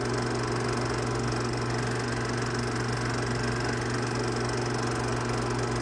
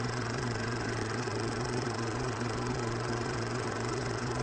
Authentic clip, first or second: first